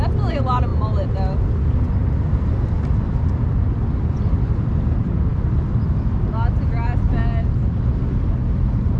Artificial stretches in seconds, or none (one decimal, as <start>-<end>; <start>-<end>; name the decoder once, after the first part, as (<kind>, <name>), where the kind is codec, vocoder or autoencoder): none